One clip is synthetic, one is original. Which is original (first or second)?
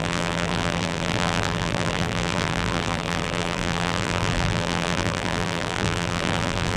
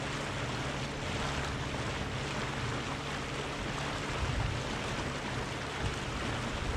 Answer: second